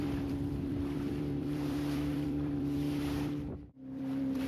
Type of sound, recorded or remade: remade